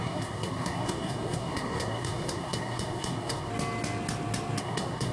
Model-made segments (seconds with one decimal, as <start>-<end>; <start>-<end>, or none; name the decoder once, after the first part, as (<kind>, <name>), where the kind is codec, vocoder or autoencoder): 0.0-3.5 (codec, SNAC); 4.6-5.1